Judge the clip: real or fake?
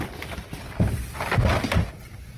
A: real